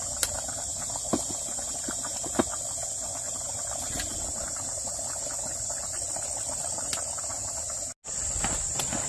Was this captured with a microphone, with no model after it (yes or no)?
yes